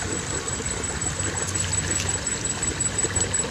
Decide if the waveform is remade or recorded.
recorded